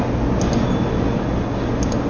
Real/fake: real